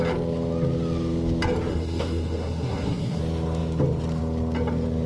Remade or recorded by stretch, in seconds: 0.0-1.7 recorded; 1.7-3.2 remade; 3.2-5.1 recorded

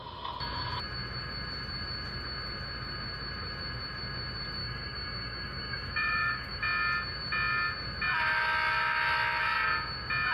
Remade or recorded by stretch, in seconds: 0.0-4.6 recorded; 4.6-6.6 remade; 6.6-10.3 recorded

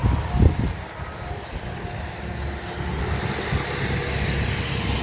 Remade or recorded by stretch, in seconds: 0.0-5.0 recorded